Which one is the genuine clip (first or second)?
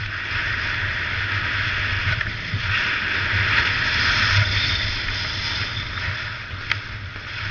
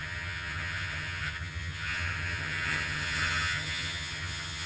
first